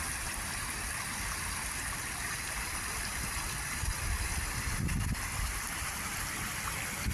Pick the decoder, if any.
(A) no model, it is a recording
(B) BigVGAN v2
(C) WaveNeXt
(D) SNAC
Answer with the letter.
B